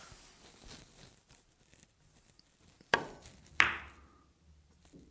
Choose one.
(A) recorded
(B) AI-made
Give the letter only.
A